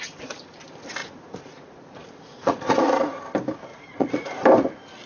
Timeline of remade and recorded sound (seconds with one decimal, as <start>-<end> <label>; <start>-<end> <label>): 0.0-1.0 recorded; 1.0-3.2 remade; 3.2-3.7 recorded; 3.7-4.4 remade; 4.4-5.1 recorded